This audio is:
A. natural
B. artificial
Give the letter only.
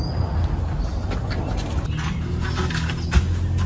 A